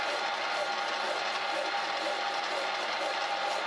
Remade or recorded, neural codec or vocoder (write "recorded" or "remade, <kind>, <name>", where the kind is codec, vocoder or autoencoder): recorded